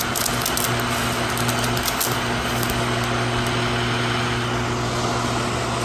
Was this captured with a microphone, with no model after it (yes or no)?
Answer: yes